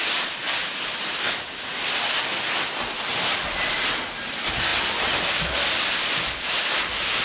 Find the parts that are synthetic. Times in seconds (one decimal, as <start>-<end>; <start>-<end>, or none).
none